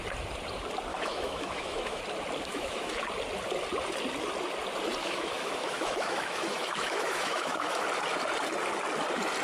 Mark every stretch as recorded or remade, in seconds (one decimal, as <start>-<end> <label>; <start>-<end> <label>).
0.0-0.9 recorded; 0.9-2.0 remade; 2.0-2.5 recorded; 2.5-3.0 remade; 3.0-5.0 recorded; 5.0-7.8 remade; 7.8-9.4 recorded